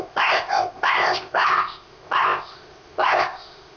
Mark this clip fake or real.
fake